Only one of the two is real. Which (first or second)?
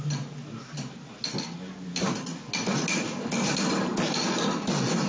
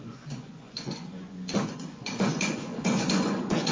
first